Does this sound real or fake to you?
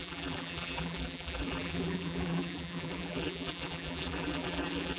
fake